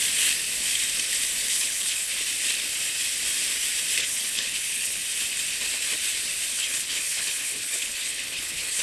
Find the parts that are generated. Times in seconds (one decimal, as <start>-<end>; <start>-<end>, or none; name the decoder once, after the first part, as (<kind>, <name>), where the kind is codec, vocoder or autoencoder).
1.5-2.1 (codec, HILCodec); 4.0-5.0; 6.5-8.8